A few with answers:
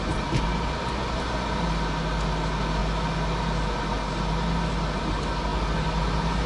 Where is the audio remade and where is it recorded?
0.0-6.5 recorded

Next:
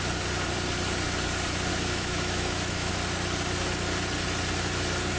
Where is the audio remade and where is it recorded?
0.0-1.7 recorded; 1.7-2.9 remade; 2.9-5.2 recorded

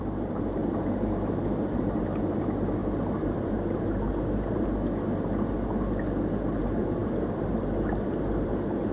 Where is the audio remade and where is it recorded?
0.0-4.1 remade; 4.1-6.6 recorded; 6.6-8.9 remade

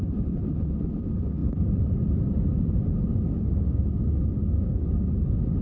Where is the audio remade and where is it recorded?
0.0-3.1 recorded; 3.1-3.8 remade; 3.8-4.6 recorded; 4.6-5.1 remade; 5.1-5.6 recorded